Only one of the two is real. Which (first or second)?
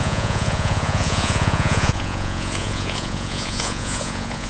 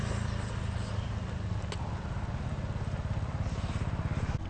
second